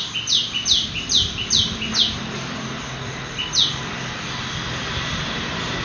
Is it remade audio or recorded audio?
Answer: recorded